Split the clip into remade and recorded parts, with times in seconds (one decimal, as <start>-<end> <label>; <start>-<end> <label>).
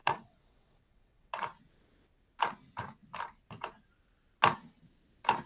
0.0-1.3 remade; 1.3-5.5 recorded